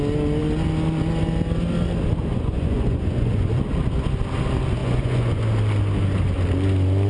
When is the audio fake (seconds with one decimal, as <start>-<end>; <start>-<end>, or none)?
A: 2.3-3.5; 4.8-5.4